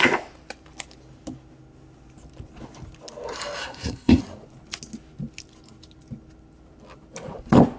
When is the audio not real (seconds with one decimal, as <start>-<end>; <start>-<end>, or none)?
3.6-4.2